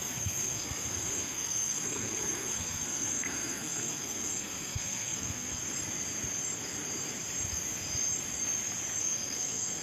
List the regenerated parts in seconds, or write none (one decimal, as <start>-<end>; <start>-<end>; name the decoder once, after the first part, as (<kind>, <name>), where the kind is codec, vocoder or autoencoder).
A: 0.0-5.6 (codec, SNAC); 9.0-9.8